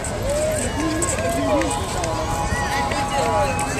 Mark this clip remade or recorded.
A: recorded